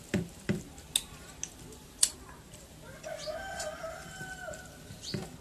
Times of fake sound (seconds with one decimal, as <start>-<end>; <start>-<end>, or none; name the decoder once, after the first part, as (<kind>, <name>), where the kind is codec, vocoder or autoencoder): 1.8-2.7 (vocoder, BigVGAN v2)